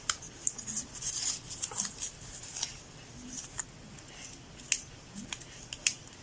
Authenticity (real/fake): real